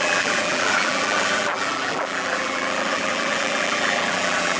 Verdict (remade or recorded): remade